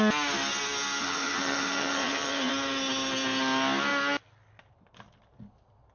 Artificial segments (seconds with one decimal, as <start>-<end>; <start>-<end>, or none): 1.0-2.5